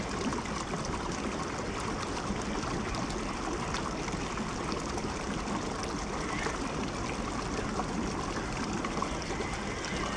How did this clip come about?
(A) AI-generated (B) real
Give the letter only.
B